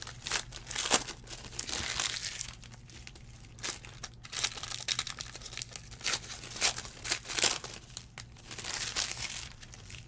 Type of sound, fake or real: real